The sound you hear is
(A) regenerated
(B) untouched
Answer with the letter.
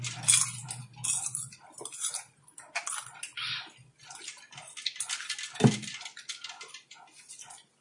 B